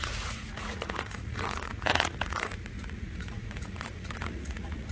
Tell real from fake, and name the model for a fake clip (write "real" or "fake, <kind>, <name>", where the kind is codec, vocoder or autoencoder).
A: fake, vocoder, Vocos